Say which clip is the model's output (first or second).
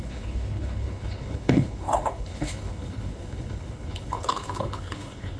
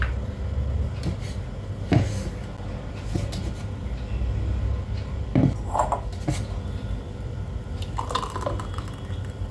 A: first